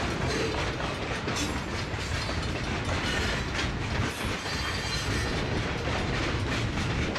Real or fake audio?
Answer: real